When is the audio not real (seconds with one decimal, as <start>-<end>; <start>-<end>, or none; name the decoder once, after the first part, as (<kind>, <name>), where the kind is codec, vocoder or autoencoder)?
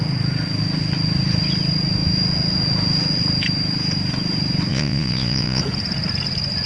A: 4.7-5.6 (vocoder, Vocos)